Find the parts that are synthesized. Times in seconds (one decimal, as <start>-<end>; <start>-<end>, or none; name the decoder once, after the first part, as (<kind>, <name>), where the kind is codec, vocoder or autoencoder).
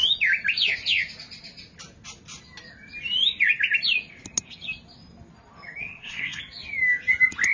5.8-6.4 (codec, SNAC)